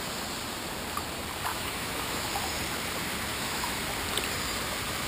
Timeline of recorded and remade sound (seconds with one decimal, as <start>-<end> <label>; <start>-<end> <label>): 0.0-1.5 recorded; 1.5-2.3 remade; 2.3-3.3 recorded; 3.3-3.8 remade; 3.8-5.1 recorded

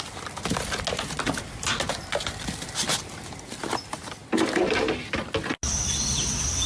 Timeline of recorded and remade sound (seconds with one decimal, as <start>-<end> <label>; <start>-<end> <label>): 0.0-6.7 recorded